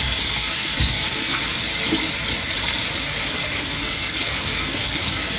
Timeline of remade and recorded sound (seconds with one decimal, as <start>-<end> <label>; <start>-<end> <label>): 0.0-1.6 remade; 1.6-3.3 recorded; 3.3-5.4 remade